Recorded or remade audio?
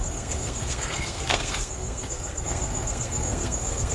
remade